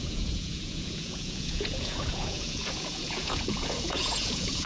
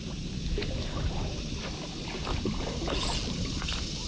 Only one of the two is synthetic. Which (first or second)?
first